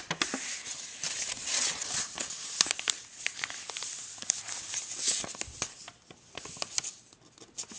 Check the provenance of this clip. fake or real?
real